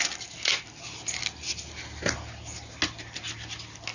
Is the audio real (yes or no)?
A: yes